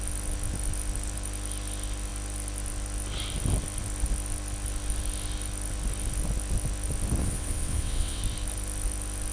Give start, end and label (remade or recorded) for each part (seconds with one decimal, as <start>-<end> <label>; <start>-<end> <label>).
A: 0.0-7.2 recorded; 7.2-8.2 remade; 8.2-9.3 recorded